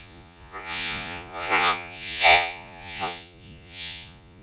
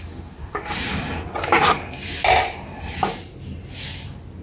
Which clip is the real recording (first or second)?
second